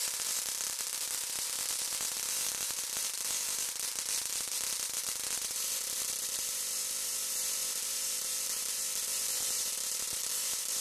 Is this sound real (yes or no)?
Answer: no